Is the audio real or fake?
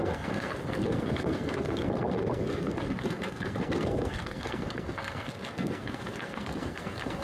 fake